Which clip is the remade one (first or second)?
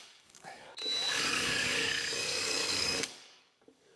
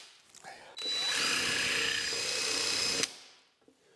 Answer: first